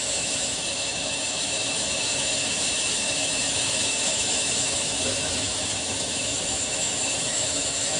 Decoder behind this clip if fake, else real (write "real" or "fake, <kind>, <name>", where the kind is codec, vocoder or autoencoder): fake, autoencoder, DAC-VAE